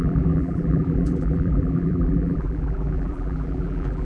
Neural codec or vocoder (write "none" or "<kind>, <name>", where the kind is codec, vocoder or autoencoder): vocoder, BigVGAN v2